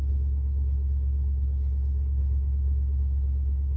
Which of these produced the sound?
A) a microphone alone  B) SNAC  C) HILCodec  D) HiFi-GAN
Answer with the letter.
C